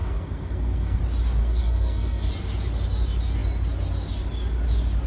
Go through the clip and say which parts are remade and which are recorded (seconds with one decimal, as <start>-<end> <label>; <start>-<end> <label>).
0.0-1.0 remade; 1.0-1.4 recorded; 1.4-2.3 remade; 2.3-5.1 recorded